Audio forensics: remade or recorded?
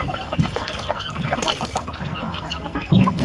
remade